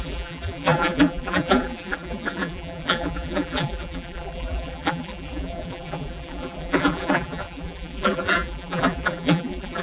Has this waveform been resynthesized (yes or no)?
yes